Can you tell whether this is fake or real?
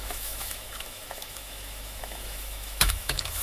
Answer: fake